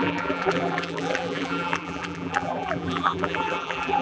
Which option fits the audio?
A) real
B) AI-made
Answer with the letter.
B